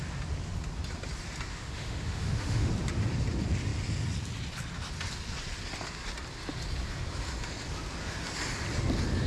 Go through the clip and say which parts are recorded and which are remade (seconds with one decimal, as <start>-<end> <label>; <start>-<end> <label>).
0.0-1.5 recorded; 1.5-2.7 remade; 2.7-9.3 recorded